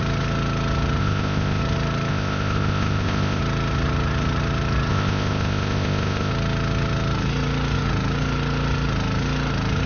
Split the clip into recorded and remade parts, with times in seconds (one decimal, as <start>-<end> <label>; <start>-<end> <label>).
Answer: 0.0-1.0 recorded; 1.0-1.6 remade; 1.6-2.1 recorded; 2.1-3.4 remade; 3.4-4.9 recorded; 4.9-6.3 remade; 6.3-9.9 recorded

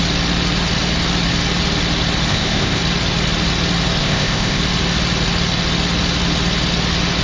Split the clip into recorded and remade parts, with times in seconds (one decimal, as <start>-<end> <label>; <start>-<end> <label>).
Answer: 0.0-2.3 recorded; 2.3-2.8 remade; 2.8-4.0 recorded; 4.0-4.6 remade; 4.6-7.2 recorded